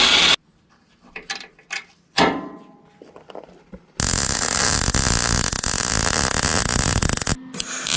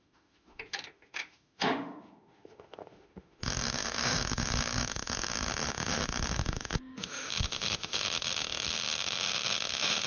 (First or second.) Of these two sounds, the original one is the first